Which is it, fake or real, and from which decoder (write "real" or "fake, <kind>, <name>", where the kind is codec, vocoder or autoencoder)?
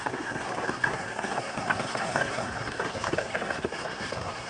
fake, codec, SNAC